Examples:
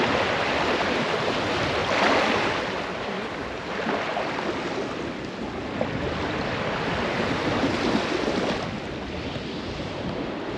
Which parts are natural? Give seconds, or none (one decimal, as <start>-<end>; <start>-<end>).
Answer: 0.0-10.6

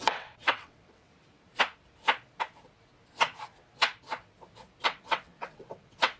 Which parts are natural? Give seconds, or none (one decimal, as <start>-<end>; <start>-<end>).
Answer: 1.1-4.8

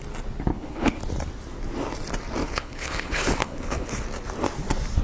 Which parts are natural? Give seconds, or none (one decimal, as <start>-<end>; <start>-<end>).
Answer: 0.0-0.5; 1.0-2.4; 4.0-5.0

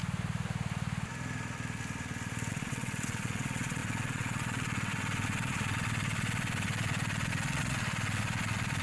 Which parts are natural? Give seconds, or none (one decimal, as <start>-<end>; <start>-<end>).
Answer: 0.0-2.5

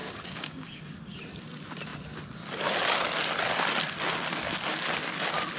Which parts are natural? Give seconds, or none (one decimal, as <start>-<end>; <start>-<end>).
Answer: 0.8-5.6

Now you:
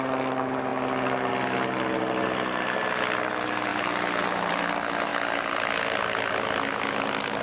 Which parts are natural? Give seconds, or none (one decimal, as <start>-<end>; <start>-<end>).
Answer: 0.0-7.4